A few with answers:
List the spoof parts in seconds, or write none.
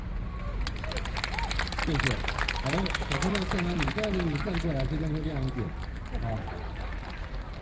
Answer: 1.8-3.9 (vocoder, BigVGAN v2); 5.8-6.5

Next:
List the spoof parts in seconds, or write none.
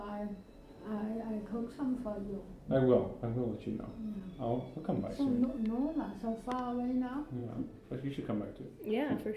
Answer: none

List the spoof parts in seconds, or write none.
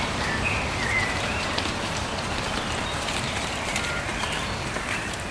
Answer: 0.0-4.1 (vocoder, BigVGAN v2); 4.7-5.3